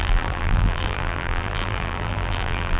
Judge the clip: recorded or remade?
remade